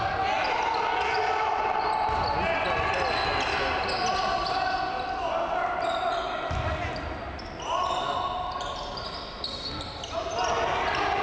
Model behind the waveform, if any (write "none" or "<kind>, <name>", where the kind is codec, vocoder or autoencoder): none